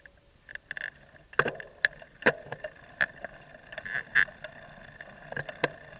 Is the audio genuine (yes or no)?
yes